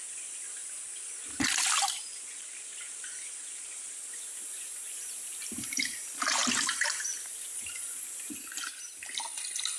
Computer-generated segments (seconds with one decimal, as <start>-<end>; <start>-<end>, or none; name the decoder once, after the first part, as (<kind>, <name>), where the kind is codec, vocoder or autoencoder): 0.0-0.6 (vocoder, BigVGAN v2); 2.0-8.7